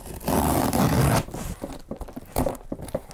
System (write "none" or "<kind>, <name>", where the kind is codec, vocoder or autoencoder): none